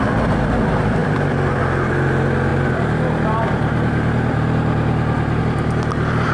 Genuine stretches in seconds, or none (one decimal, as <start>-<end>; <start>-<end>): 0.0-6.3